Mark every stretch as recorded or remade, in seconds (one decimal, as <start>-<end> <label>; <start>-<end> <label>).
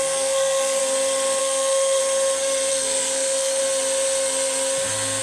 0.0-0.8 remade; 0.8-1.4 recorded; 1.4-2.0 remade; 2.0-2.7 recorded; 2.7-3.6 remade; 3.6-5.2 recorded